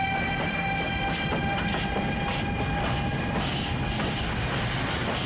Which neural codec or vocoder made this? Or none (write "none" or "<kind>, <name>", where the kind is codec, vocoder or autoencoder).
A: none